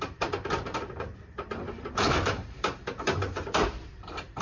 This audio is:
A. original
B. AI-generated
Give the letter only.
B